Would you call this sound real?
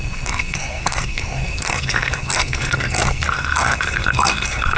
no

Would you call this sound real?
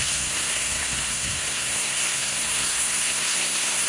no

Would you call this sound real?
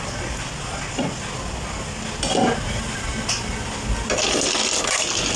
yes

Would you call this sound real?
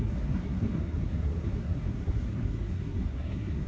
no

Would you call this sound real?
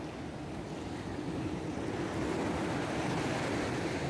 yes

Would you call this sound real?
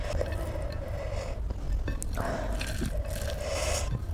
yes